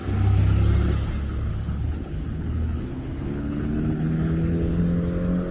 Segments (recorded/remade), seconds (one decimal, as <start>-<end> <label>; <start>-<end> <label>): 0.0-1.5 recorded; 1.5-4.8 remade; 4.8-5.5 recorded